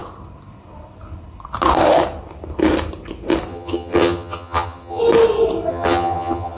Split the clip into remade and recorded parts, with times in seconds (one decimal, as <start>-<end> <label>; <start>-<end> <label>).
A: 0.0-3.5 recorded; 3.5-5.0 remade; 5.0-5.7 recorded; 5.7-6.6 remade